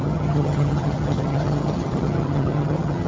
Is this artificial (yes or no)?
yes